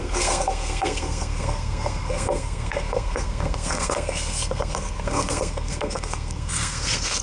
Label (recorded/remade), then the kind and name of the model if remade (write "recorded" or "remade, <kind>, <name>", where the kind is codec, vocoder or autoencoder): remade, codec, SNAC